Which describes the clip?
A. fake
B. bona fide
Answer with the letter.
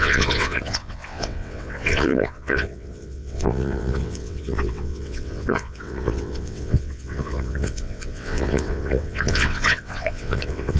A